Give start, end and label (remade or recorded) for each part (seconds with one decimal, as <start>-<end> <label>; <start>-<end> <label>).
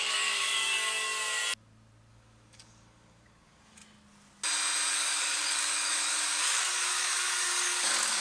0.0-1.4 remade; 1.4-2.1 recorded; 2.1-3.8 remade; 3.8-4.9 recorded; 4.9-8.2 remade